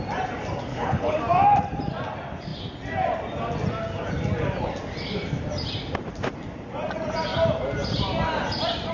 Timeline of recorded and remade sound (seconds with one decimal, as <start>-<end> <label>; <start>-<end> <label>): 0.0-0.7 recorded; 0.7-1.2 remade; 1.2-8.9 recorded

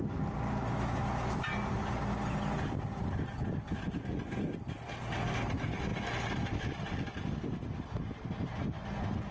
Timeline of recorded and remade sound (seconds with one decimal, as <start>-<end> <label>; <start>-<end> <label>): 0.0-9.3 recorded